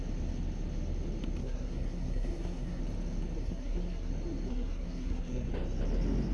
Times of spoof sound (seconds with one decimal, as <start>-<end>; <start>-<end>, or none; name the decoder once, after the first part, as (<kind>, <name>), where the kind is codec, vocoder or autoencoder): 1.4-2.8 (codec, SNAC); 3.4-4.1; 4.5-5.5